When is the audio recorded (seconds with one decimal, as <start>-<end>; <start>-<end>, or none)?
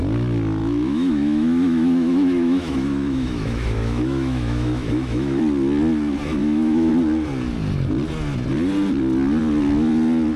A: 0.0-0.6; 5.4-6.4; 6.9-10.4